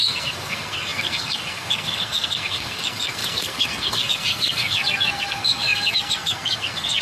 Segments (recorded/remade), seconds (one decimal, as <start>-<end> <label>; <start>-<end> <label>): 0.0-7.0 remade